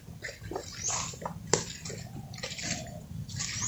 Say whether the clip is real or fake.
real